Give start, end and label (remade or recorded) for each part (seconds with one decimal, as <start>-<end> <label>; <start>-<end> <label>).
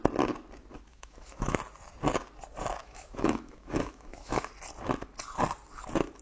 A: 0.0-0.9 recorded; 0.9-1.6 remade; 1.6-2.8 recorded; 2.8-4.5 remade; 4.5-6.2 recorded